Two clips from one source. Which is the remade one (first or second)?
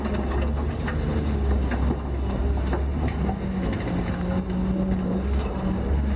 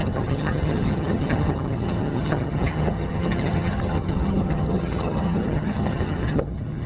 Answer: second